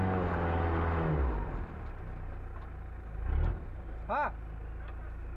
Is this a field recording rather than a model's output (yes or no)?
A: yes